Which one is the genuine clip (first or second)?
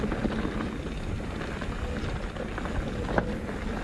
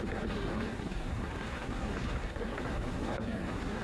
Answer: first